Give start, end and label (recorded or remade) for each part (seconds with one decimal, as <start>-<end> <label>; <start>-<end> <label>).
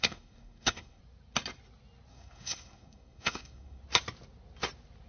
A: 0.0-1.0 remade; 1.0-2.1 recorded; 2.1-3.8 remade; 3.8-5.1 recorded